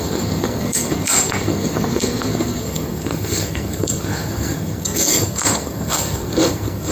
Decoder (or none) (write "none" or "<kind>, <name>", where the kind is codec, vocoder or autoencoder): codec, SNAC